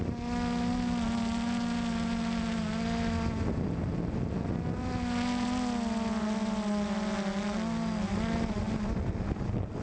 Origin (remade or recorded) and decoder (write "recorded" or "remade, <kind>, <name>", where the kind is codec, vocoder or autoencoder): recorded